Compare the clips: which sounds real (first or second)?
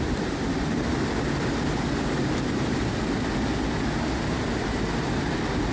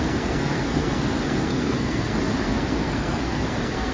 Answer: first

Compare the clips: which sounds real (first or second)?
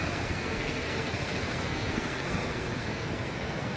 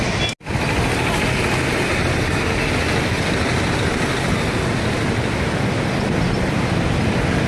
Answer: second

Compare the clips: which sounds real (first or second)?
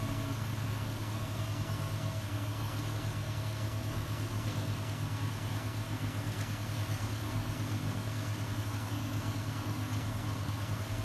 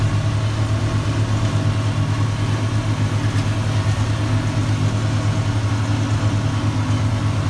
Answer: second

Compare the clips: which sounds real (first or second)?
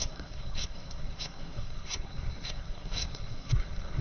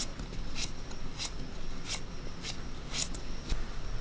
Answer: second